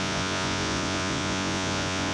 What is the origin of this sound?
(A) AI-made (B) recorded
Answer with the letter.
A